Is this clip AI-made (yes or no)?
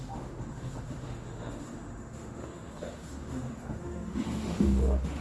yes